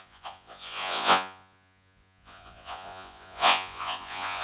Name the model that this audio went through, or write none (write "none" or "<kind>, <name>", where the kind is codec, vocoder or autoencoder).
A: vocoder, Vocos